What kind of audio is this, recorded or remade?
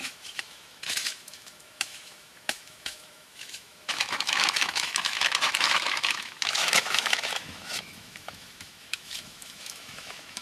remade